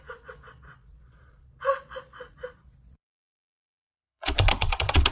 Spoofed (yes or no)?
yes